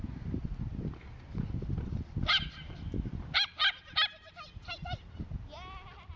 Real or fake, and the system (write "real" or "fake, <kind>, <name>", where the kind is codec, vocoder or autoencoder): real